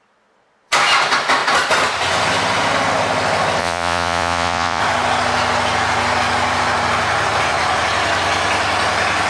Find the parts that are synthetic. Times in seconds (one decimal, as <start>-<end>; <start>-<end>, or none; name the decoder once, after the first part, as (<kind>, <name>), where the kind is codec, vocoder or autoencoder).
3.6-4.8 (vocoder, Vocos)